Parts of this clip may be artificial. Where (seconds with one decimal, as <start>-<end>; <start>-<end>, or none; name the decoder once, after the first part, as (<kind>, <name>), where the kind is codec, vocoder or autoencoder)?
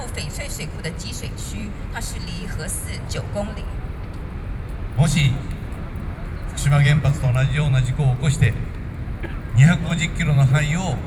0.0-11.1 (vocoder, BigVGAN v2)